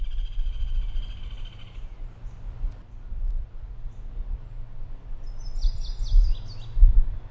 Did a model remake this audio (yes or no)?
no